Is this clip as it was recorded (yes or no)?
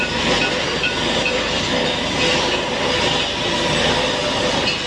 yes